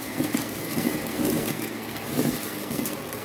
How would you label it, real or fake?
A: fake